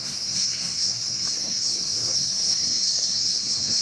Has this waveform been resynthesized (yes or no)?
yes